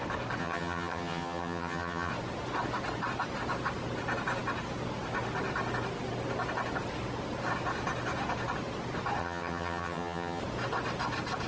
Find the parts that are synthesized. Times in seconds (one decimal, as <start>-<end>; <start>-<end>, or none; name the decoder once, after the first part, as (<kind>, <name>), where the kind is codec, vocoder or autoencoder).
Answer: 0.4-2.1 (vocoder, HiFi-GAN); 9.2-10.4